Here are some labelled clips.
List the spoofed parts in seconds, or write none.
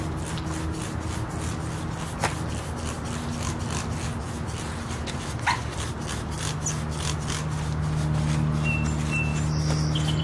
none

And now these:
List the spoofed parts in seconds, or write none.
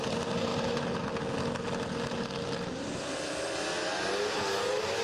0.5-1.0 (vocoder, BigVGAN v2)